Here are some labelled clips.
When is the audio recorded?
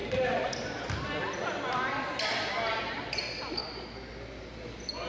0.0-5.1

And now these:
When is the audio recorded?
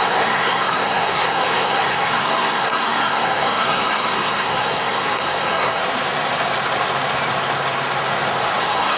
5.8-8.6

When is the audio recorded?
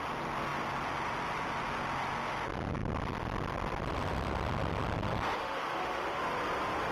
0.0-5.4; 6.2-6.9